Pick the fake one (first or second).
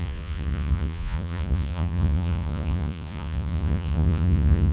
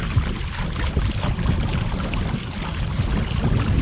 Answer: first